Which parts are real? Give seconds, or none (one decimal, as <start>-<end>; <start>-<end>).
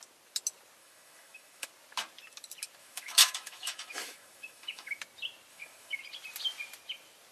0.0-0.8; 1.7-2.8; 5.0-5.5; 6.0-7.3